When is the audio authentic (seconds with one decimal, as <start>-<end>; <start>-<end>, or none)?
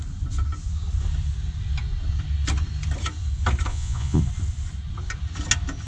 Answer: 0.0-3.7; 4.2-5.9